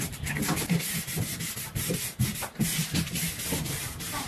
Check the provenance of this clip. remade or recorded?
recorded